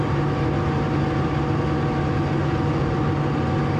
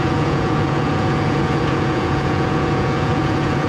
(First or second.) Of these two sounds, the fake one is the second